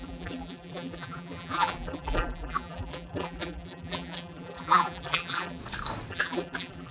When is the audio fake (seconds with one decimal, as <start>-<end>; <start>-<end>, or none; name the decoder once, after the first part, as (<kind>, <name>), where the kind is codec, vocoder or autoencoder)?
0.0-5.6 (vocoder, BigVGAN v2); 6.1-6.9